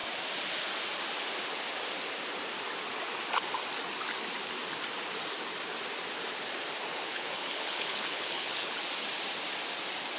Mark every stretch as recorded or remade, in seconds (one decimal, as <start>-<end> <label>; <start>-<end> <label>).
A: 0.0-6.9 recorded; 6.9-8.8 remade; 8.8-10.2 recorded